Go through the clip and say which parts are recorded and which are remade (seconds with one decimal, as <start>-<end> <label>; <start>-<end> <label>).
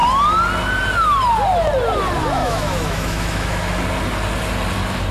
0.0-2.4 recorded; 2.4-3.7 remade; 3.7-5.1 recorded